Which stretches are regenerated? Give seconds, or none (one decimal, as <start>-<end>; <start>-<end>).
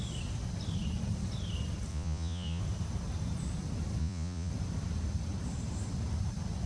1.9-2.6; 4.0-4.5